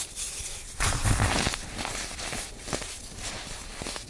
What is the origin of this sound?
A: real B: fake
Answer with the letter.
A